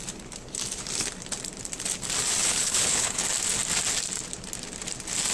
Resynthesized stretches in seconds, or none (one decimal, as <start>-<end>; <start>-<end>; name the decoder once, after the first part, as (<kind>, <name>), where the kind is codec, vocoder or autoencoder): 2.4-3.2 (codec, HILCodec)